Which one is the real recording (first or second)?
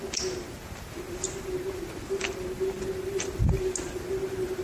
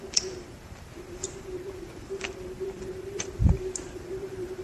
first